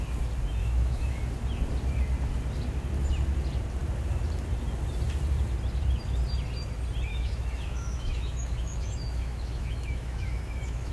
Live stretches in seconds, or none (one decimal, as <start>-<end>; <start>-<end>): 0.0-0.6; 1.2-7.1